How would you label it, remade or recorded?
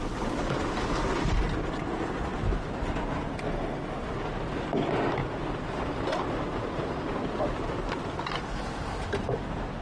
recorded